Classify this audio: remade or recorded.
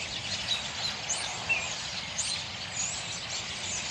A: recorded